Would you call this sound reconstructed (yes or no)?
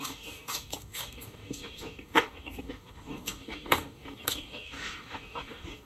yes